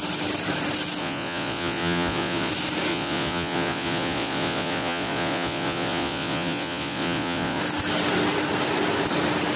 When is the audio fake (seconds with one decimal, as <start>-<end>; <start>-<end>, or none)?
1.0-2.5; 2.9-7.6